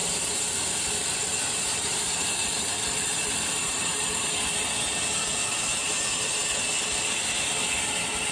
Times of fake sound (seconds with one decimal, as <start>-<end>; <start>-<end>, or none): 0.0-4.3